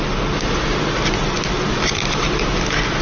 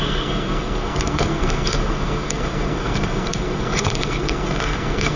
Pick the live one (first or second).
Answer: first